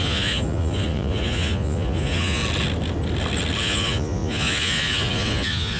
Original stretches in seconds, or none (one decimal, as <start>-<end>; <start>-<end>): 2.4-3.6